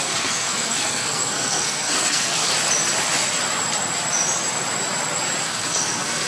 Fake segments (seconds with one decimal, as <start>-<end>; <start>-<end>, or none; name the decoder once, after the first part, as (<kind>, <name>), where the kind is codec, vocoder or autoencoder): 0.0-2.5 (codec, SNAC); 5.4-6.3